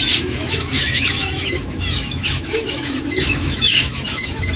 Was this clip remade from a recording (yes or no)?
yes